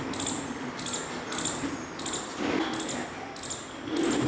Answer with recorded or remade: recorded